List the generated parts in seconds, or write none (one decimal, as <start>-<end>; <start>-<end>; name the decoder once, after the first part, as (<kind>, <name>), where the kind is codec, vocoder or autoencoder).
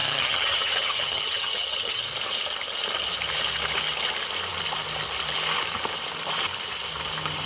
0.0-2.0 (vocoder, HiFi-GAN)